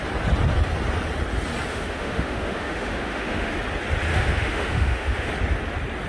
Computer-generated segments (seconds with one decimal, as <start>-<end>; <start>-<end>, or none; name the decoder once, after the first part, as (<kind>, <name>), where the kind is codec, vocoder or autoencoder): 1.7-3.5 (autoencoder, DAC-VAE); 4.1-5.3